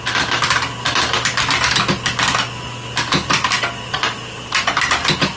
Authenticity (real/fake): real